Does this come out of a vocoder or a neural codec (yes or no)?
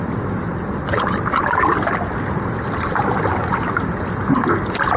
no